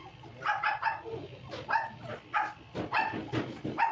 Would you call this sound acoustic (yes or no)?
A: yes